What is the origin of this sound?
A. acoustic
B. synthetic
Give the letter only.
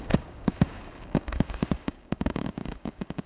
B